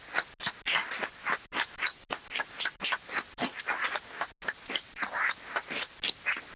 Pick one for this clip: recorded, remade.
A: recorded